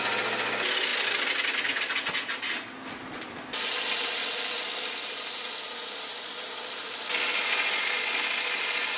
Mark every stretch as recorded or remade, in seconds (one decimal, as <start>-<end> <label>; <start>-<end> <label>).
0.0-9.0 recorded